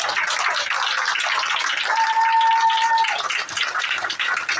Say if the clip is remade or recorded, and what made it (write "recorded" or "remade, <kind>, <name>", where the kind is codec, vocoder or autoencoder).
recorded